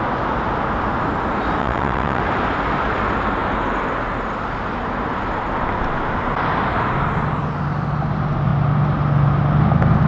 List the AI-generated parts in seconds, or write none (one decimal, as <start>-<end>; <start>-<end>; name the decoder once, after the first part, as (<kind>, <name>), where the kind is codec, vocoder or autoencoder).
1.6-2.2 (vocoder, WaveNeXt)